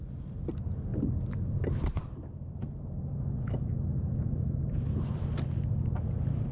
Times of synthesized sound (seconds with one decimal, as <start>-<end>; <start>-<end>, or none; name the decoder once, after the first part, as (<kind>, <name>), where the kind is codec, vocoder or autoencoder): none